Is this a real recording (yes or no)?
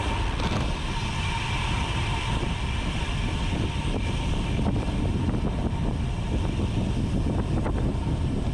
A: yes